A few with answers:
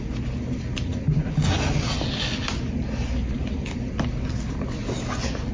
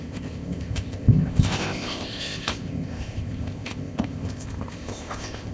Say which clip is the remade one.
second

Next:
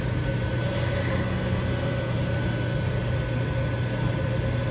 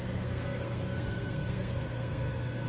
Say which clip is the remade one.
second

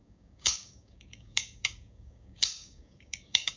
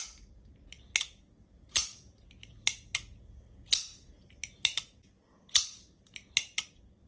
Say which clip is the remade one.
first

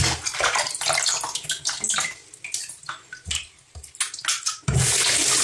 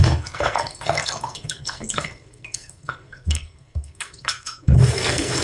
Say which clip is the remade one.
second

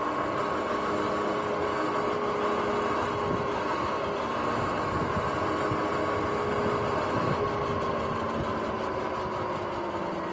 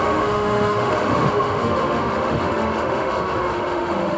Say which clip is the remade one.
second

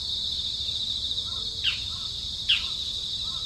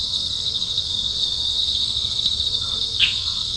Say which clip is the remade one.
second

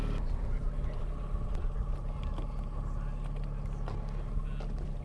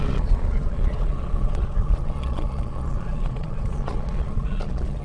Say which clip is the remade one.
second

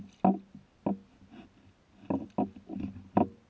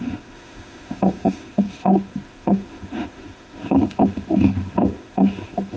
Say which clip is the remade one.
second